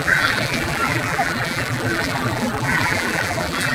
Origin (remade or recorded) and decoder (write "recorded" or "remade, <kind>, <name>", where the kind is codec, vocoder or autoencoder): remade, vocoder, BigVGAN v2